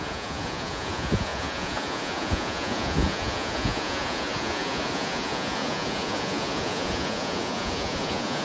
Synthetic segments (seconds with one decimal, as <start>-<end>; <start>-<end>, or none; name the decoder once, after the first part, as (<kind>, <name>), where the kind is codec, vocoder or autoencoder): 0.0-8.4 (vocoder, Vocos)